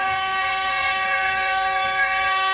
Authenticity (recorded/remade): remade